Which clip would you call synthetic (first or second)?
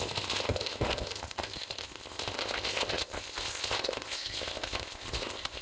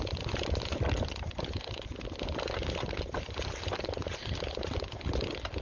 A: first